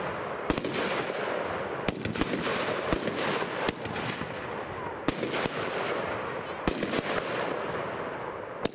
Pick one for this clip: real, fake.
real